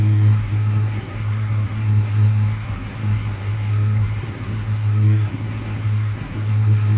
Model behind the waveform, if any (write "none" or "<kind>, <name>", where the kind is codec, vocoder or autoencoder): codec, SNAC